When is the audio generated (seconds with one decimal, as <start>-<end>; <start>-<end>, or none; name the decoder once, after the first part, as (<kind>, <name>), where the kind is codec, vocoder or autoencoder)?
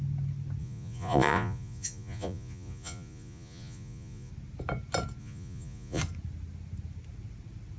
0.6-4.3 (vocoder, Vocos); 5.2-6.0